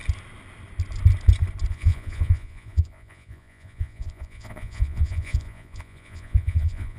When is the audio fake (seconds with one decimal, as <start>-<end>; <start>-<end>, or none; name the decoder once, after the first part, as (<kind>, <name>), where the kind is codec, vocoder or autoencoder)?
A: 1.7-7.0 (vocoder, Vocos)